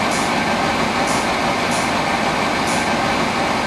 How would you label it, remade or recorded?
recorded